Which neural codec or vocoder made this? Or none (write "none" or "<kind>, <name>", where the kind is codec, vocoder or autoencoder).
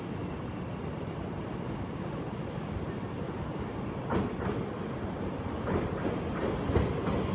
none